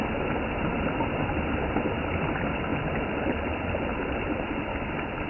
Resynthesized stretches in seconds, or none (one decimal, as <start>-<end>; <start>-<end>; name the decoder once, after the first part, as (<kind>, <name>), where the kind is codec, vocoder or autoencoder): 2.7-4.5 (vocoder, BigVGAN v2)